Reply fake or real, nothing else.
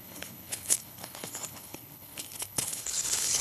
fake